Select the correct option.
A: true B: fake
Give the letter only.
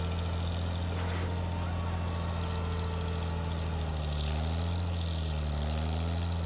A